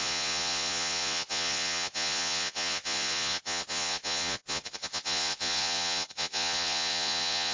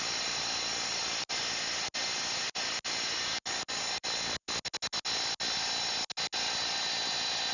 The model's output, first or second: first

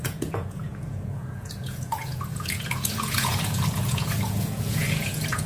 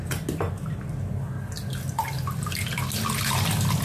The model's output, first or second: first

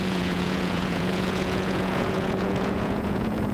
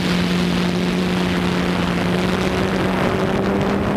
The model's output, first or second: first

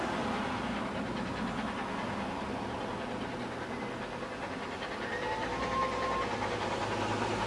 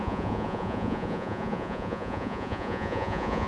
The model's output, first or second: second